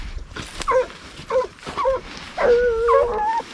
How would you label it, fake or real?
real